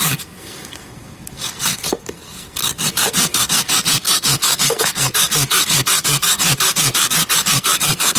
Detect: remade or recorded remade